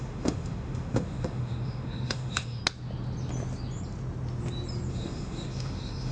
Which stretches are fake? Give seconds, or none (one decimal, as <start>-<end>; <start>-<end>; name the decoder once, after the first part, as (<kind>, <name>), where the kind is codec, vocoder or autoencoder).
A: 0.0-2.6 (autoencoder, DAC-VAE); 4.9-6.1

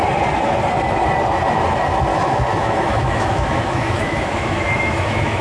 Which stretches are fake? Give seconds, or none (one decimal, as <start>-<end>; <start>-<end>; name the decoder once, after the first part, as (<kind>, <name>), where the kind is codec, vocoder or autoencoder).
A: 2.1-5.4 (autoencoder, DAC-VAE)

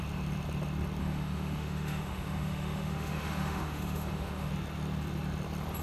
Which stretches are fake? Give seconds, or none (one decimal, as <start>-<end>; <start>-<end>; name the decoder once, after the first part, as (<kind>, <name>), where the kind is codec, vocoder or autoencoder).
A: 1.0-4.5 (autoencoder, DAC-VAE)

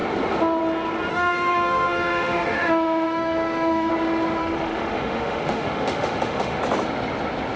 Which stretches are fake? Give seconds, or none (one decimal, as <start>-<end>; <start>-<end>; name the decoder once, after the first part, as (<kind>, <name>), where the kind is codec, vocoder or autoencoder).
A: 1.1-3.9 (autoencoder, DAC-VAE); 4.4-6.6

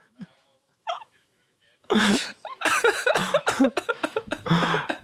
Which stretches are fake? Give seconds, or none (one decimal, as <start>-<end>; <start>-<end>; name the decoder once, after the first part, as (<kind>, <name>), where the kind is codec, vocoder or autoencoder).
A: 0.0-5.0 (autoencoder, DAC-VAE)